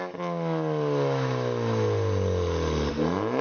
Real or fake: real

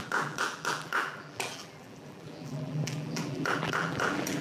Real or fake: fake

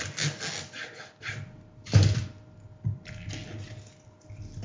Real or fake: real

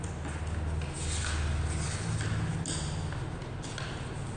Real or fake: real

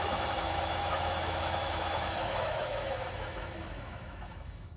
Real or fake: fake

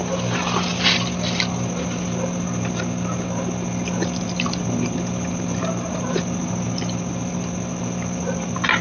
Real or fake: real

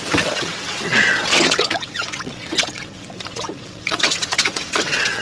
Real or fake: fake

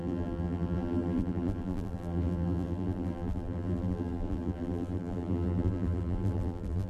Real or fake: fake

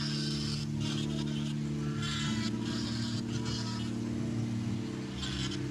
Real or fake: real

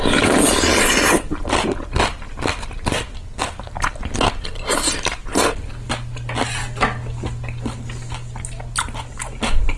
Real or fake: real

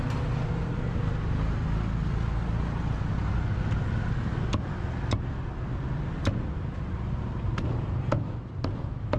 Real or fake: real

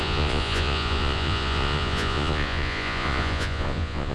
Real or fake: fake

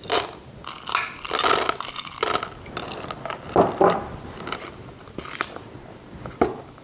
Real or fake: real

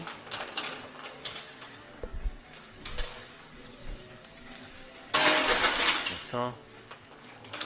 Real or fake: fake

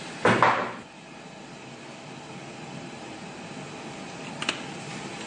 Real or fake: real